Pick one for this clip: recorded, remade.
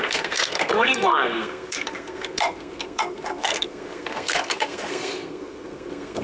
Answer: remade